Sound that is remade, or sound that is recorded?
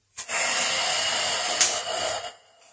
recorded